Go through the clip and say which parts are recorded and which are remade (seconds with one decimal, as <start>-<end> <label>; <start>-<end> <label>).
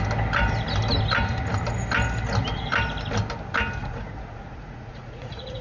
0.0-3.8 recorded; 3.8-5.6 remade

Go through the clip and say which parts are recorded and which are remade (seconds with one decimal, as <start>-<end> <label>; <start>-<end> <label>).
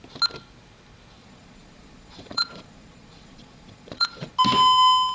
0.0-1.2 recorded; 1.2-4.3 remade; 4.3-5.1 recorded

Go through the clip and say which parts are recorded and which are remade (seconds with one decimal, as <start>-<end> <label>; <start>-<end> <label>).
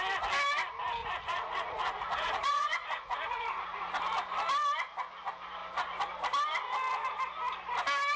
0.0-1.0 recorded; 1.0-3.9 remade; 3.9-8.2 recorded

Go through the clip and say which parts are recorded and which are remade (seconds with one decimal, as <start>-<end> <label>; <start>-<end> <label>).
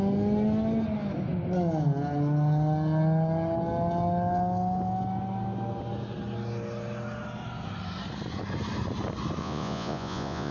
0.0-9.4 recorded; 9.4-10.5 remade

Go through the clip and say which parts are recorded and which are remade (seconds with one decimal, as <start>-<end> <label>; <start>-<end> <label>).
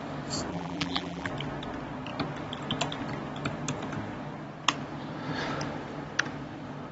0.0-0.5 recorded; 0.5-1.3 remade; 1.3-6.9 recorded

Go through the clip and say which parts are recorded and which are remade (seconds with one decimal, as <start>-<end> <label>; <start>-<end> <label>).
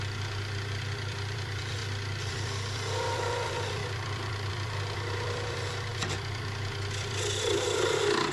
0.0-1.8 remade; 1.8-2.3 recorded; 2.3-8.3 remade